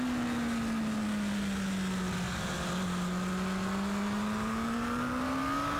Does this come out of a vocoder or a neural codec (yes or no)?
no